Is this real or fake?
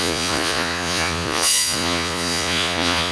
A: fake